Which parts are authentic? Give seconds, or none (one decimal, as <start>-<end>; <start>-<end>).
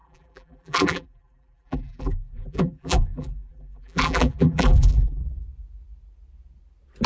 5.2-7.1